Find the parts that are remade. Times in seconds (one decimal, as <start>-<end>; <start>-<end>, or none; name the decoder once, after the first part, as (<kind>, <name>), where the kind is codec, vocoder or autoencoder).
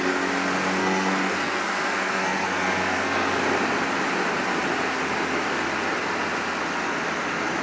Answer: 0.8-3.4 (codec, SNAC)